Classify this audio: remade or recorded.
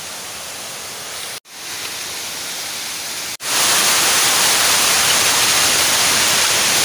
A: recorded